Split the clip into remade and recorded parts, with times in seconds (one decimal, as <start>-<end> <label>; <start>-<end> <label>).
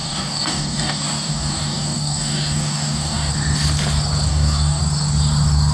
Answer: 0.0-3.3 remade; 3.3-4.3 recorded; 4.3-4.8 remade; 4.8-5.7 recorded